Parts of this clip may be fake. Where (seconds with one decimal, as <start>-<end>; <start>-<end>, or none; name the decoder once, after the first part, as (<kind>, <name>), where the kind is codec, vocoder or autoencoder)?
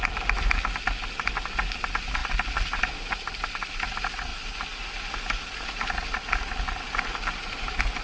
none